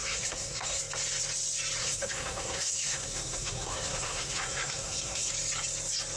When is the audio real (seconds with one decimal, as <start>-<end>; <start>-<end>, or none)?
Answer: 0.8-1.8; 5.3-6.2